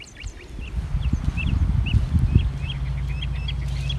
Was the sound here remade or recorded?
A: recorded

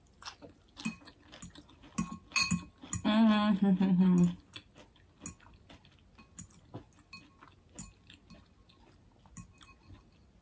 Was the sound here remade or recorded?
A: recorded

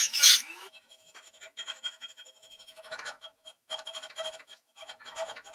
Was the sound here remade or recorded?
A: remade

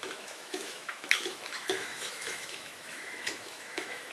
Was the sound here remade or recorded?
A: remade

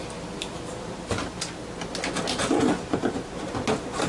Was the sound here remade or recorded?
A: recorded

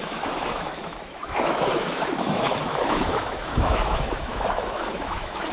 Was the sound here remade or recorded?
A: remade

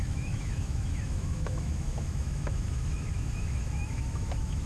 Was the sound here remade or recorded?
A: remade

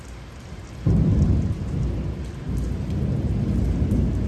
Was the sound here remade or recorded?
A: recorded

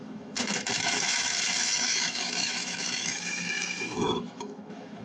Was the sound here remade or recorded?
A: remade